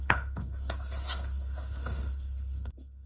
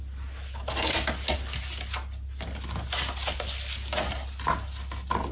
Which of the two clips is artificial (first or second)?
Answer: first